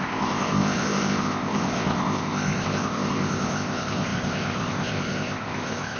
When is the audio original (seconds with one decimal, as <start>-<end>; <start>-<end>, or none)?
none